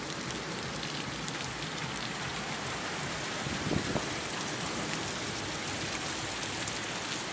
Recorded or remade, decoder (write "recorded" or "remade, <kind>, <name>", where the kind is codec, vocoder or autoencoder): recorded